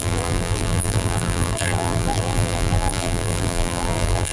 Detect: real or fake fake